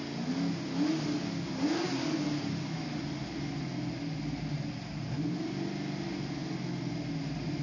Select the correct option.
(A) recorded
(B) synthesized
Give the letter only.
A